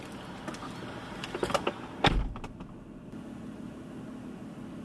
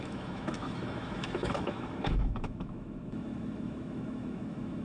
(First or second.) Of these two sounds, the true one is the first